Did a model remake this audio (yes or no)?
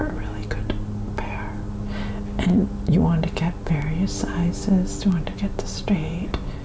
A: no